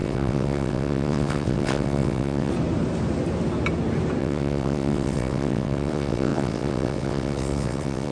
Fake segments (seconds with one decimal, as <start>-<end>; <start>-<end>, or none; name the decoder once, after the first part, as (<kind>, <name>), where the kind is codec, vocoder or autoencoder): 0.0-2.5 (vocoder, WaveNeXt); 4.2-8.1